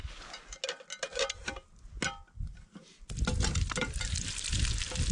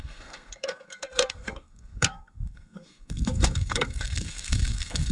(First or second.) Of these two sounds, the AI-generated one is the second